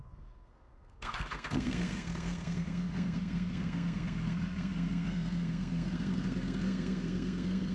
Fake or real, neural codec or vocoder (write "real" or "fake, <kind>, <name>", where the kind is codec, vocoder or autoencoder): fake, codec, SNAC